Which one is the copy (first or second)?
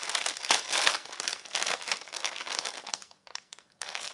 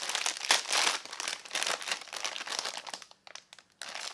first